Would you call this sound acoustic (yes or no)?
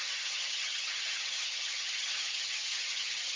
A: no